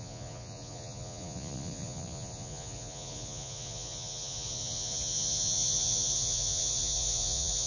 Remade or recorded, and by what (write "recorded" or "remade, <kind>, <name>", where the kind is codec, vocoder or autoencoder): remade, vocoder, Vocos